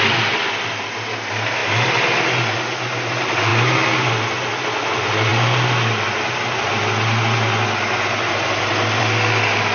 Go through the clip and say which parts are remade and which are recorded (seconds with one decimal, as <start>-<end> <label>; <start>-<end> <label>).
0.0-9.7 recorded